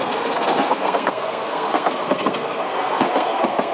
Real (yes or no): no